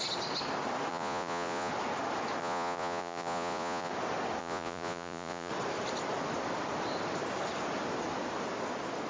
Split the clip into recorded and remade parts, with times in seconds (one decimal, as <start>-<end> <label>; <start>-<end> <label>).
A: 0.0-0.9 recorded; 0.9-1.7 remade; 1.7-2.4 recorded; 2.4-3.9 remade; 3.9-4.4 recorded; 4.4-5.5 remade; 5.5-9.1 recorded